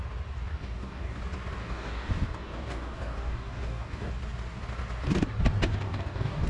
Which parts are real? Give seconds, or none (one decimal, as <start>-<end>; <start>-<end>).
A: 0.0-0.5; 1.2-1.6; 4.1-5.7